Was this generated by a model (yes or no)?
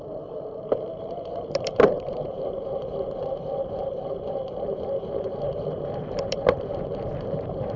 yes